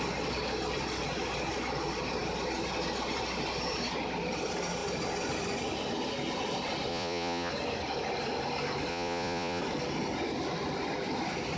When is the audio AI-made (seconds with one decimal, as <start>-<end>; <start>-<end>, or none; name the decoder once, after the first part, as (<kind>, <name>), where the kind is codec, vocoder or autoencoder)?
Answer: 6.9-7.5 (vocoder, Vocos); 8.9-9.6